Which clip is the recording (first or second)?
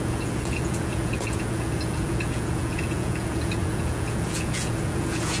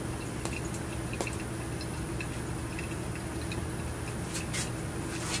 second